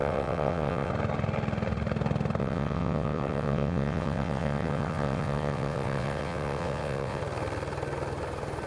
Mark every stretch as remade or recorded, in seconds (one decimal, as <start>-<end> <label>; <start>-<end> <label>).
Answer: 0.0-0.9 remade; 0.9-2.4 recorded; 2.4-7.2 remade; 7.2-8.7 recorded